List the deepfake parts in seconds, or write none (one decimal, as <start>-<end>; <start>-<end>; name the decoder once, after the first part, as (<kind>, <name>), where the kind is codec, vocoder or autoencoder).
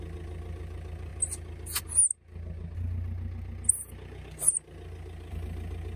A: none